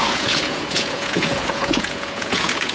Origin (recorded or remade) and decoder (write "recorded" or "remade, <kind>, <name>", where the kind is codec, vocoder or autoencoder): remade, vocoder, Vocos